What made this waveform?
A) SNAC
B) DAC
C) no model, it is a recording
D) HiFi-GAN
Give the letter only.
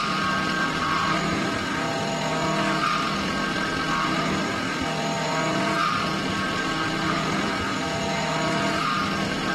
C